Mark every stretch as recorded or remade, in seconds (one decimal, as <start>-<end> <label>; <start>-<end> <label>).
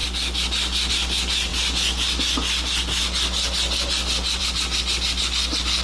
0.0-5.8 recorded